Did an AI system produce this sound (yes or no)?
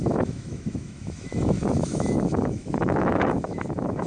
yes